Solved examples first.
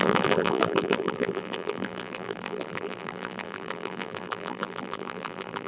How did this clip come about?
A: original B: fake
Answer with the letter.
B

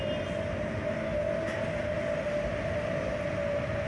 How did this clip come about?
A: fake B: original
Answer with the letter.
B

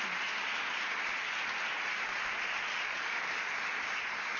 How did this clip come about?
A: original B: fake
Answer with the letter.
A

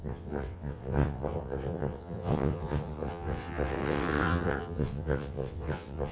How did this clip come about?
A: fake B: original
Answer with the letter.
A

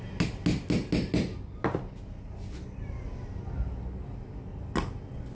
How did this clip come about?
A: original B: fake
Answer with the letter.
A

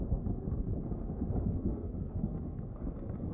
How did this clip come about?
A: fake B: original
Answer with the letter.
A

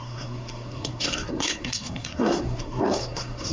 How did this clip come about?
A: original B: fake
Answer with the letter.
B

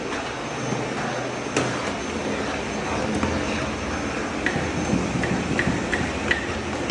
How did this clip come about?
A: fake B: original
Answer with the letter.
B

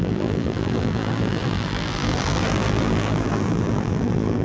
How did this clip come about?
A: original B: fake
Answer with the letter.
B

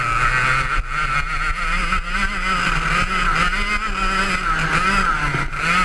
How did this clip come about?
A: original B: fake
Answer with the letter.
A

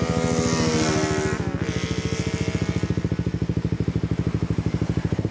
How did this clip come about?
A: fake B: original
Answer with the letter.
B